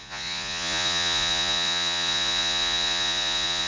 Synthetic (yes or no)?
yes